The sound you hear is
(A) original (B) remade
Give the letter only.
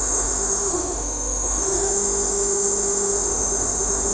B